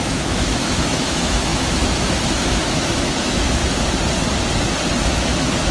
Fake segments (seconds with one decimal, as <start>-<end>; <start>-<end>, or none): 0.0-3.6; 5.1-5.7